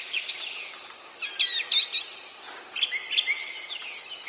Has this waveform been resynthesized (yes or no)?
no